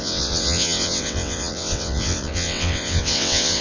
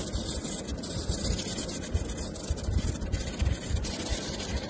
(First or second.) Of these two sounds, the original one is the second